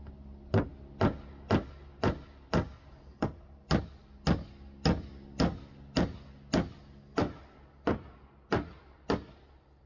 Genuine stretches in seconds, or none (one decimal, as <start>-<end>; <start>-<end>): 0.0-3.1; 3.8-9.9